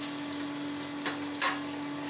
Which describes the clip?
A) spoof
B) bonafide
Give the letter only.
B